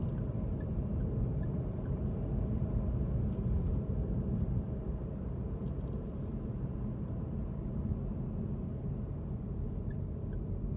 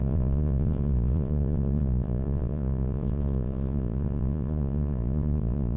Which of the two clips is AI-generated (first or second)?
second